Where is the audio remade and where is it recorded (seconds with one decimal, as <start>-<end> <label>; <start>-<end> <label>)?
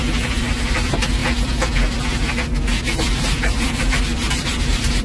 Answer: 0.0-0.5 recorded; 0.5-1.2 remade; 1.2-3.1 recorded; 3.1-5.0 remade